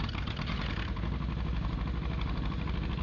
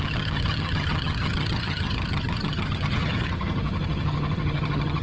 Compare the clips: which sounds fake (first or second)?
second